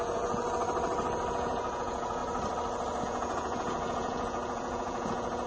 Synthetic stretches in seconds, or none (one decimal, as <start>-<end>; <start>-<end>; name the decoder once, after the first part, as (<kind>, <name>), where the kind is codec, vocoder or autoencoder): 0.0-0.4 (vocoder, Vocos); 1.3-2.2; 3.0-5.5